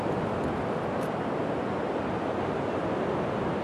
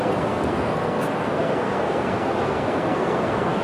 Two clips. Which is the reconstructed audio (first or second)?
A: second